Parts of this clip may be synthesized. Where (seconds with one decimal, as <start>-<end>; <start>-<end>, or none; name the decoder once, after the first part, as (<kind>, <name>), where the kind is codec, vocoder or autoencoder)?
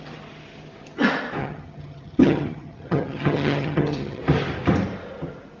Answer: 1.4-4.2 (vocoder, HiFi-GAN)